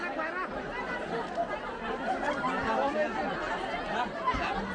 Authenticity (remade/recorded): recorded